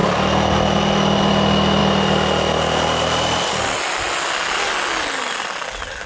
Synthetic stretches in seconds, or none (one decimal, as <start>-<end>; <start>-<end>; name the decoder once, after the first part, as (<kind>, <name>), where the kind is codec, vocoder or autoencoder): none